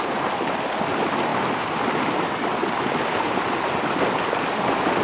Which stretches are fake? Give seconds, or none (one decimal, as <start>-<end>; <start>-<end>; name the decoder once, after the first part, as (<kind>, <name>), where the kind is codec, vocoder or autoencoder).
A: none